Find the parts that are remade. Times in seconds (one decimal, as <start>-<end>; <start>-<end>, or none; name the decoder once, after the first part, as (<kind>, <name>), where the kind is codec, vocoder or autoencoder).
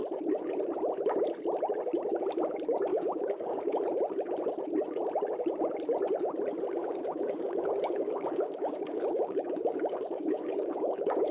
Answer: 2.9-3.8 (codec, DAC); 6.8-11.3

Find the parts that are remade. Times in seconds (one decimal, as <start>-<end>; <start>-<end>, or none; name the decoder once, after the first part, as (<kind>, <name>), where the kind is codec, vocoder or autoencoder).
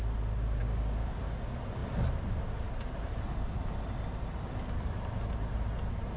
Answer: 0.6-1.2 (codec, DAC)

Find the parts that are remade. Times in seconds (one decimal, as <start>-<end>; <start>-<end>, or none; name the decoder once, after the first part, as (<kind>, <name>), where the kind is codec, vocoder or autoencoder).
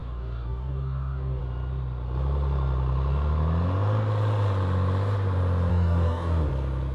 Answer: 0.0-1.4 (codec, DAC); 5.7-6.5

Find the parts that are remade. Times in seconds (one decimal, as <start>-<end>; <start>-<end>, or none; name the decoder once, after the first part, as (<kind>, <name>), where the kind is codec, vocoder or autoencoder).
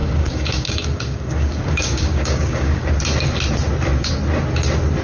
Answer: 0.0-2.9 (codec, DAC)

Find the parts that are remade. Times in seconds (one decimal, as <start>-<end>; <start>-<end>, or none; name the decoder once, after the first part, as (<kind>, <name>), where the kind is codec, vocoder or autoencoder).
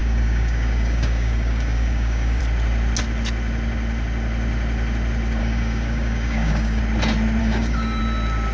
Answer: 0.0-2.4 (codec, DAC); 5.4-6.8; 7.4-8.0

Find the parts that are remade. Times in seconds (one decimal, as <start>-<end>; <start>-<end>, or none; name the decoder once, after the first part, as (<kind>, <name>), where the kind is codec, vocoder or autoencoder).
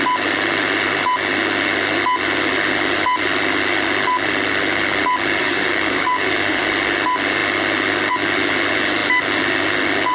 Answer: 5.4-6.6 (codec, DAC)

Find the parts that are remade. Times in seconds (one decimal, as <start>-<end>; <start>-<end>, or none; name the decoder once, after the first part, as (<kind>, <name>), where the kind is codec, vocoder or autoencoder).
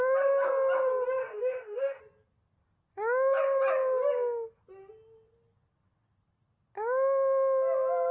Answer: 1.2-2.0 (codec, DAC)